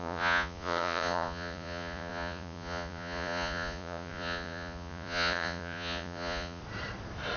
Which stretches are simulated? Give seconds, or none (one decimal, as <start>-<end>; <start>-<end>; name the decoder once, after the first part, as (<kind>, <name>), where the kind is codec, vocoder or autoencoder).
0.0-6.6 (vocoder, Vocos)